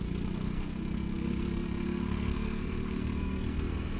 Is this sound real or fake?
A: fake